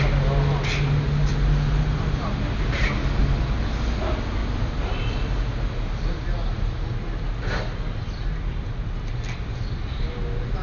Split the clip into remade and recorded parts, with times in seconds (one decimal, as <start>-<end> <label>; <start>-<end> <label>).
0.0-10.6 recorded